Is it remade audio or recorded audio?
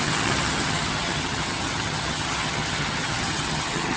remade